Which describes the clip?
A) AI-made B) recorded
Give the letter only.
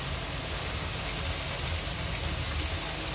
B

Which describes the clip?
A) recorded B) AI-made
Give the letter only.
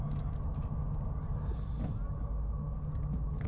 A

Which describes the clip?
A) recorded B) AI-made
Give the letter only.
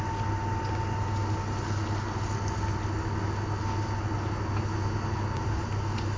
A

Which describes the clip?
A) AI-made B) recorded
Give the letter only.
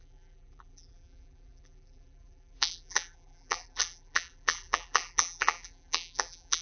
A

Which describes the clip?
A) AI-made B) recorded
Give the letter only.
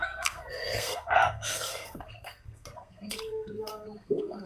A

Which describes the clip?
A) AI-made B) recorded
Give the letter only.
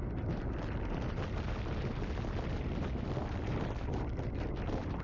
B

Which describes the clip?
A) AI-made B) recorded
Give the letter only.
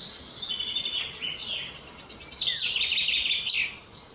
B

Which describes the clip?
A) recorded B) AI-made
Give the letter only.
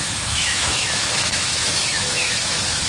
B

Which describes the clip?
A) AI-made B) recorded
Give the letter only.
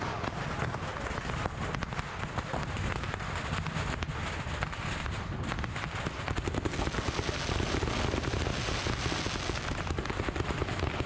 B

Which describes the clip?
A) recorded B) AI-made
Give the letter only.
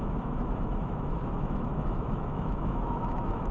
B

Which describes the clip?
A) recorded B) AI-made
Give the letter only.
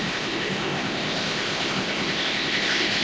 B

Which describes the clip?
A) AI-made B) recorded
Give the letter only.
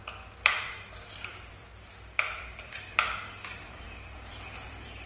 A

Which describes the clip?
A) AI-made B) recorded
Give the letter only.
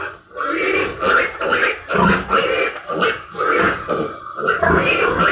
B